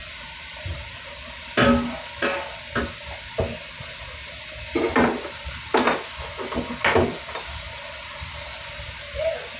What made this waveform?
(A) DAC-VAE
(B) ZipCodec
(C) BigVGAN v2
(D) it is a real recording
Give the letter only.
D